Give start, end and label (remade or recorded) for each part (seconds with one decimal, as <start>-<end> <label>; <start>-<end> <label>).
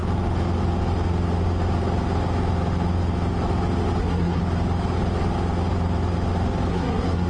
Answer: 0.0-4.0 recorded; 4.0-4.4 remade; 4.4-6.7 recorded; 6.7-7.3 remade